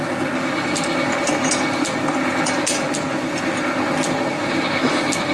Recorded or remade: recorded